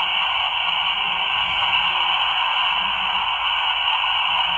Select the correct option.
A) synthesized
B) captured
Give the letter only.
B